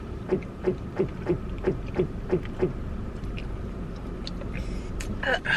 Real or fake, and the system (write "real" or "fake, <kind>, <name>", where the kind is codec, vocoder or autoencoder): fake, vocoder, BigVGAN v2